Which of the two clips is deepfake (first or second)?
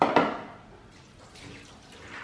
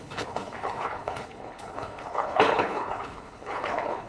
second